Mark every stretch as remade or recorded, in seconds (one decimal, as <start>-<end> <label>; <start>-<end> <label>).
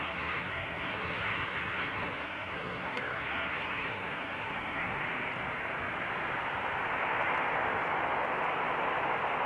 0.0-5.0 remade; 5.0-9.5 recorded